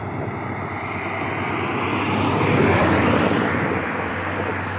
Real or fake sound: real